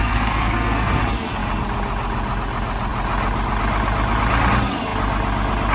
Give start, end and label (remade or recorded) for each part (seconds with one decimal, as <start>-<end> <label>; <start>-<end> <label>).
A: 0.0-1.0 remade; 1.0-5.7 recorded

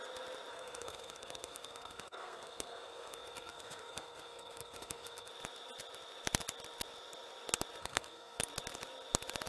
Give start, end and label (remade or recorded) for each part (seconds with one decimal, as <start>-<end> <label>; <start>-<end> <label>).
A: 0.0-0.5 recorded; 0.5-5.3 remade; 5.3-7.8 recorded; 7.8-8.4 remade; 8.4-9.5 recorded

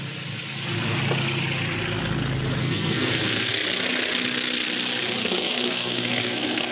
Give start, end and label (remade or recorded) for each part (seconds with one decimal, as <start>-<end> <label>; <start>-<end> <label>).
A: 0.0-2.6 recorded; 2.6-3.5 remade; 3.5-5.2 recorded; 5.2-6.7 remade

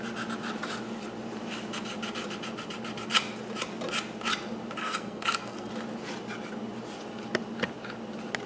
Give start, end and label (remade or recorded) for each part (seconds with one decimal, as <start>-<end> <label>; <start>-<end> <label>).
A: 0.0-4.8 recorded; 4.8-5.7 remade; 5.7-8.5 recorded

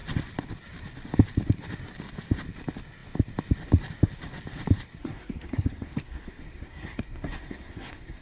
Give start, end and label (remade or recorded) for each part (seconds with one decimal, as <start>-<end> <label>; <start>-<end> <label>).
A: 0.0-5.0 recorded; 5.0-8.2 remade

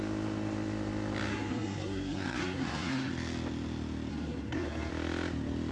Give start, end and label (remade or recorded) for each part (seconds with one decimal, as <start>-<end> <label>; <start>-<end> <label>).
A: 0.0-1.3 recorded; 1.3-3.1 remade; 3.1-4.1 recorded; 4.1-4.9 remade; 4.9-5.7 recorded

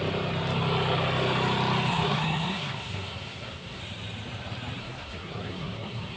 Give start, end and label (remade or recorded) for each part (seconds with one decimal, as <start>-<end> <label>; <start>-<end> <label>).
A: 0.0-1.9 recorded; 1.9-3.8 remade; 3.8-4.8 recorded; 4.8-6.2 remade